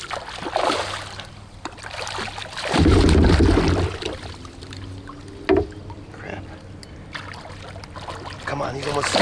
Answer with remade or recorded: recorded